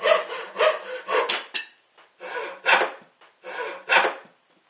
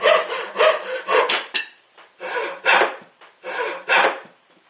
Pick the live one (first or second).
first